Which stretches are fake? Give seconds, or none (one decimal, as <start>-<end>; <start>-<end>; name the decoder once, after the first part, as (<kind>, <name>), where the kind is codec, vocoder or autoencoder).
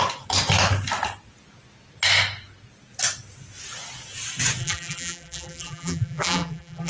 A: 4.6-6.9 (vocoder, BigVGAN v2)